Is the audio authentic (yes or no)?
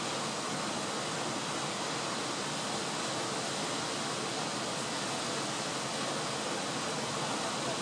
yes